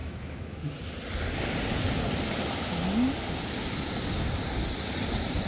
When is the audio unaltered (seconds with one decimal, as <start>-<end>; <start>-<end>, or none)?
0.6-5.5